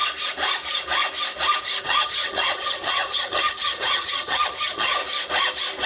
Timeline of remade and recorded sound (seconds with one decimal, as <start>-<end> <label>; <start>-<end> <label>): 0.0-1.8 recorded; 1.8-5.0 remade; 5.0-5.9 recorded